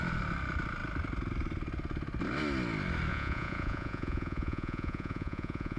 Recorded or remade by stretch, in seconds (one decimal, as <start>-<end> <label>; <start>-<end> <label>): 0.0-3.1 recorded; 3.1-5.8 remade